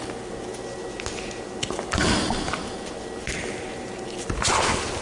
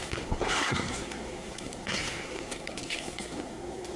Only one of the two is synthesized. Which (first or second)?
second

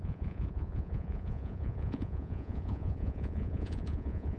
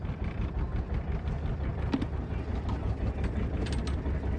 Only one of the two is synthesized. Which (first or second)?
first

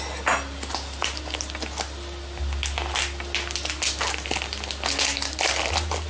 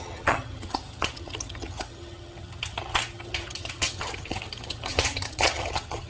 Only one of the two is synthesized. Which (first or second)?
second